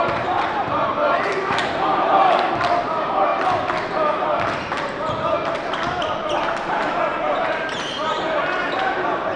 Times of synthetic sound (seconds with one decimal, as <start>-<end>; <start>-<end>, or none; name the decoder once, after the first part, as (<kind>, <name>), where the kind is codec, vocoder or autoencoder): 0.0-2.1 (vocoder, BigVGAN v2); 2.8-3.3; 6.6-9.4